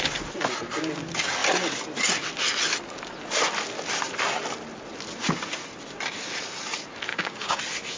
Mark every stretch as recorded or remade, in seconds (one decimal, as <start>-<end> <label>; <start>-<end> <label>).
0.0-7.1 recorded; 7.1-7.6 remade; 7.6-8.0 recorded